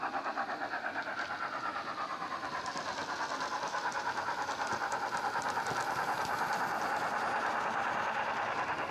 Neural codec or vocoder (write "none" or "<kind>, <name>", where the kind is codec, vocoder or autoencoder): none